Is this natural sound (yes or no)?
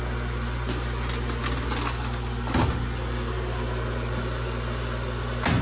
yes